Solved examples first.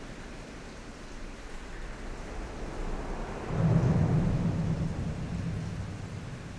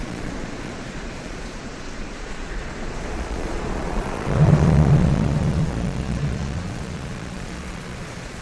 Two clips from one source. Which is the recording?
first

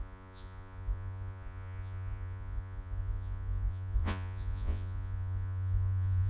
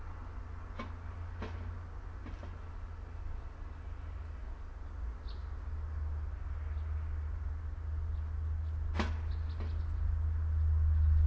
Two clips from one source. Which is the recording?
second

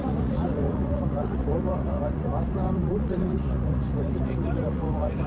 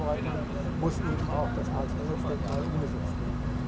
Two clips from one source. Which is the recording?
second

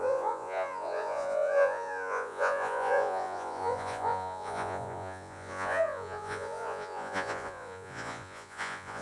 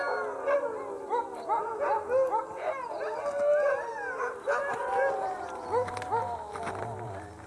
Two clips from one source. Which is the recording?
second